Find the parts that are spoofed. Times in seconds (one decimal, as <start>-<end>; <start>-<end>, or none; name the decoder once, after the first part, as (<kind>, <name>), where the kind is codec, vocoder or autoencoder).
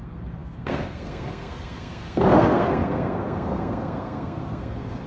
0.0-5.1 (codec, SNAC)